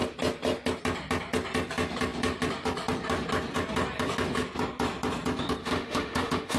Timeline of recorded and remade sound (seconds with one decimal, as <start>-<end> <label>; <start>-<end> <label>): 0.0-5.6 recorded; 5.6-6.6 remade